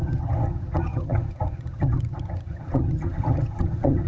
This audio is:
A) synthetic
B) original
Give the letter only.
A